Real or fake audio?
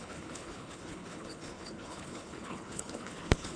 fake